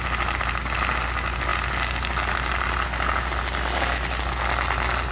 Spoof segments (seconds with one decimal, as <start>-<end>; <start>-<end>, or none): none